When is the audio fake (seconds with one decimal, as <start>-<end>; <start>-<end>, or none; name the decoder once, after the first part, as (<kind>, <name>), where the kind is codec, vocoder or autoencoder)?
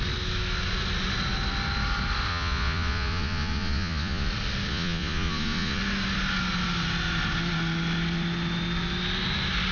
2.3-4.3 (vocoder, Vocos); 4.7-5.8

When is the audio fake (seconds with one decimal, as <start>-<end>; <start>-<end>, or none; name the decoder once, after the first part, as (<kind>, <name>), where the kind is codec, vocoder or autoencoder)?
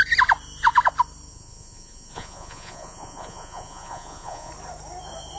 1.3-4.5 (vocoder, Vocos)